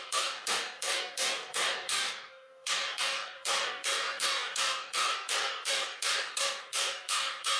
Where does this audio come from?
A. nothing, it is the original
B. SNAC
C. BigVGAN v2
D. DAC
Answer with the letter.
D